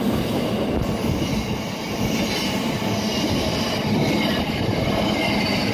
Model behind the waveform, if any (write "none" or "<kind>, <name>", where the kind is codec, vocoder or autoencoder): vocoder, BigVGAN v2